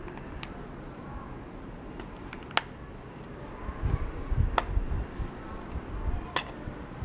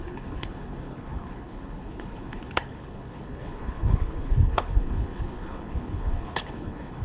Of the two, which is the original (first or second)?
first